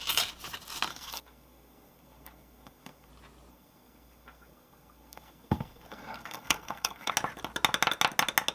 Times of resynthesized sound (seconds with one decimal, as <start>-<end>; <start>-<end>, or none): 0.9-3.1; 3.5-7.1